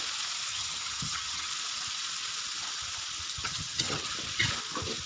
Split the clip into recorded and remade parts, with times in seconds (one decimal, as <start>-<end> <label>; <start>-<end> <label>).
0.0-0.5 recorded; 0.5-1.5 remade; 1.5-3.4 recorded; 3.4-4.1 remade; 4.1-5.1 recorded